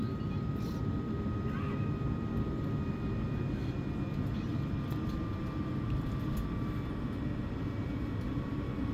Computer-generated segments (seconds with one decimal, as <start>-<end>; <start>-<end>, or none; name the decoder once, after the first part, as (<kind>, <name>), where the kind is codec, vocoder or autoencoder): none